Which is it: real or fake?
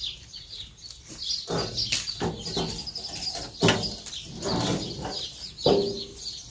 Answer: real